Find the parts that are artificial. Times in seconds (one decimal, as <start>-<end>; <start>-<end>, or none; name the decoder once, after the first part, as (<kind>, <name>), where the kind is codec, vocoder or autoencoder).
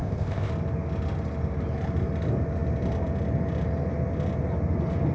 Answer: 0.0-0.5 (codec, ZipCodec)